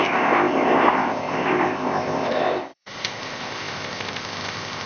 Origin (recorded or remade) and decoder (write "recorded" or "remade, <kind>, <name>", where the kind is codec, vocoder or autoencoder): remade, codec, ZipCodec